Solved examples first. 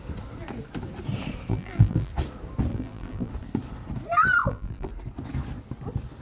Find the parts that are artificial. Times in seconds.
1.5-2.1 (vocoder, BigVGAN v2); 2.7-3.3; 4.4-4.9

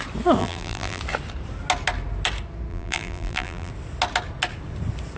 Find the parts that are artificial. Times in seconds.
0.4-1.0 (vocoder, BigVGAN v2); 2.7-3.7

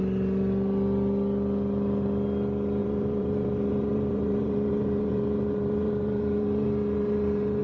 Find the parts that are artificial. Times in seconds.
2.8-7.6 (vocoder, BigVGAN v2)

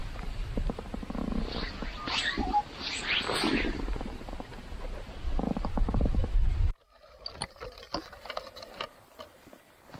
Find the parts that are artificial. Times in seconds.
0.0-1.1 (vocoder, BigVGAN v2)

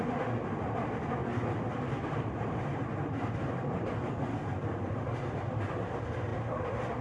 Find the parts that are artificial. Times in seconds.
1.2-4.1 (vocoder, BigVGAN v2)

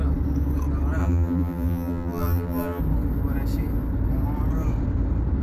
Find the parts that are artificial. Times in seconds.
1.0-2.8 (vocoder, BigVGAN v2)